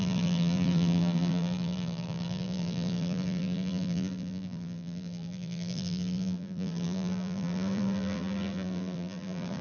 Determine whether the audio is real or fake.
fake